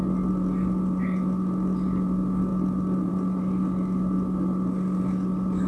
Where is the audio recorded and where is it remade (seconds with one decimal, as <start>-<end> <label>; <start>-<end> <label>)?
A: 0.0-5.7 recorded